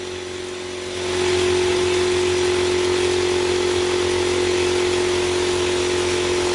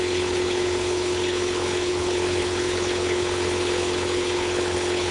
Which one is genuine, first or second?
first